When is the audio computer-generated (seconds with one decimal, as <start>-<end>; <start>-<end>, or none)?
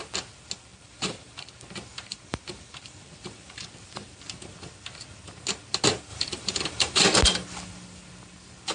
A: 0.7-1.5; 1.9-3.7; 6.1-7.0